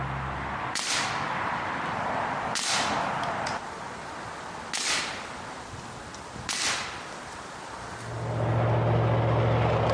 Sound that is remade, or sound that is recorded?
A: recorded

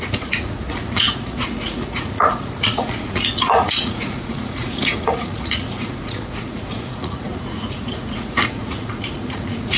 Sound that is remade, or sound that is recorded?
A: remade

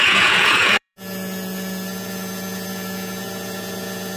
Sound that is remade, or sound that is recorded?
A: remade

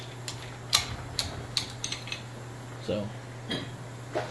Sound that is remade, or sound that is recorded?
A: recorded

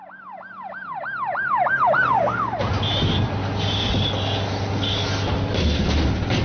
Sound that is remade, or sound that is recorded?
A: recorded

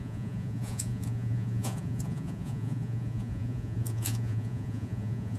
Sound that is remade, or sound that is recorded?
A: remade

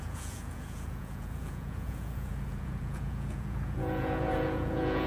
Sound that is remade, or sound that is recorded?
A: remade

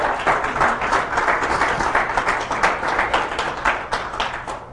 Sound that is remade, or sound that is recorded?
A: recorded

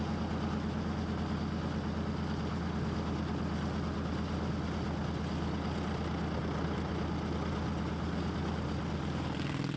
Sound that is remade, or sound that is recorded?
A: recorded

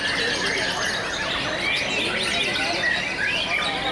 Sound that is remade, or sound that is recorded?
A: recorded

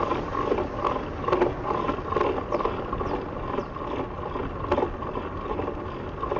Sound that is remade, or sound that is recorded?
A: recorded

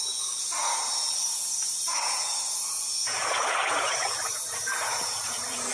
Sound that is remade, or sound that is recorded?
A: remade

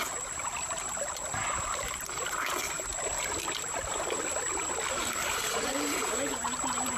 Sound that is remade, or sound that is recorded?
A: recorded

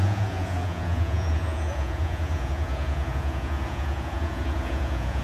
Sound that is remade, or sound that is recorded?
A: remade